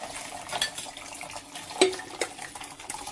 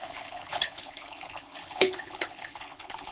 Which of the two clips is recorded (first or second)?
first